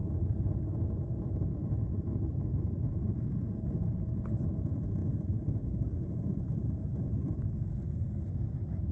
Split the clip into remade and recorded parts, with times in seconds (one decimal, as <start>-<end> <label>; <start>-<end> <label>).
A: 0.0-0.6 remade; 0.6-1.9 recorded; 1.9-4.0 remade; 4.0-8.9 recorded